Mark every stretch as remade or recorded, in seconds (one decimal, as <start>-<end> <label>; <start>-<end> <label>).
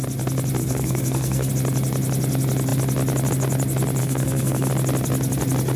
0.0-0.6 recorded; 0.6-1.5 remade; 1.5-4.0 recorded; 4.0-4.7 remade; 4.7-5.8 recorded